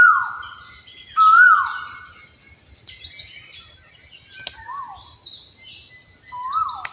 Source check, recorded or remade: recorded